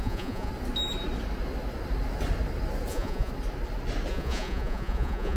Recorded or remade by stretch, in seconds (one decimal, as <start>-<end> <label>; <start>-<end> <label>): 0.0-0.5 remade; 0.5-2.9 recorded; 2.9-3.3 remade; 3.3-4.1 recorded; 4.1-5.4 remade